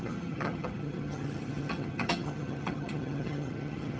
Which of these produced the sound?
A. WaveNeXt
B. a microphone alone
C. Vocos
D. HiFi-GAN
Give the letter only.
D